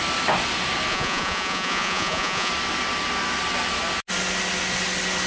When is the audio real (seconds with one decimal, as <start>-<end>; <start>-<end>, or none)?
0.0-0.9; 2.5-5.3